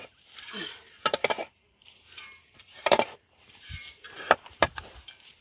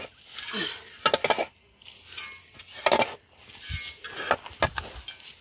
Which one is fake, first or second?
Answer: first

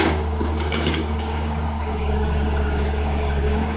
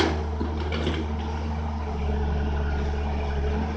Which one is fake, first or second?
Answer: first